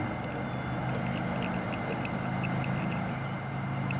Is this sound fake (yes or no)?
no